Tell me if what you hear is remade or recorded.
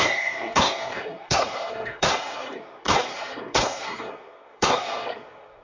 remade